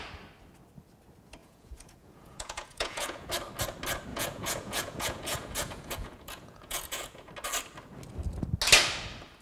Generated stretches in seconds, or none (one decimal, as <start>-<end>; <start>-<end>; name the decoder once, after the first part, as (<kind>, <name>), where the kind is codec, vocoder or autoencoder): 1.4-3.3 (vocoder, Vocos); 4.1-7.3